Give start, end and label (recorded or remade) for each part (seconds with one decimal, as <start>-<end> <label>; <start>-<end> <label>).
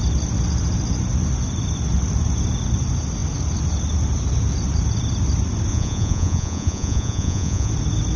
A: 0.0-5.7 recorded; 5.7-7.7 remade; 7.7-8.2 recorded